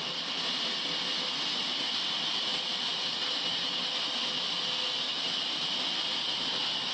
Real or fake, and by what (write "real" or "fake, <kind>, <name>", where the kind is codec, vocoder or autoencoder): real